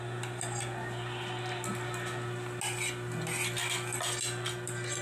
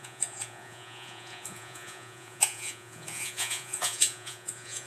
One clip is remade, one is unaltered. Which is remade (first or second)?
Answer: second